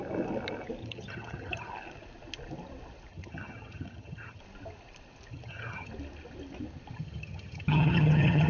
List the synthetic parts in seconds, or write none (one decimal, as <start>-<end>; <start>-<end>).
0.8-1.7; 3.1-4.4; 5.3-5.9; 6.9-8.5